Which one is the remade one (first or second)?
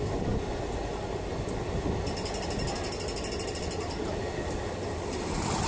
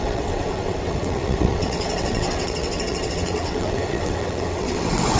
second